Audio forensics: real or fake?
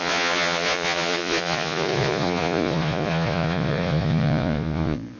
fake